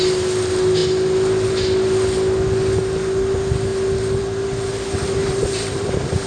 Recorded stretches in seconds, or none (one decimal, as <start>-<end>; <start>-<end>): 0.0-5.2